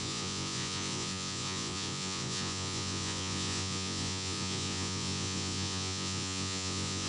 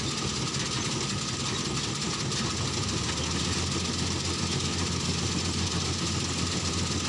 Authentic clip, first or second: second